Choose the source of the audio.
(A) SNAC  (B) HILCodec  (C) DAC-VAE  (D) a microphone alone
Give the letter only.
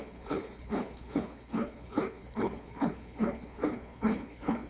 B